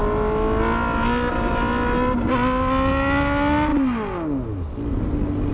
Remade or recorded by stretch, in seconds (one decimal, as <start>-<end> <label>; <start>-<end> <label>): 0.0-5.5 recorded